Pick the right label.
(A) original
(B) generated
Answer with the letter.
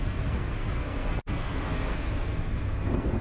B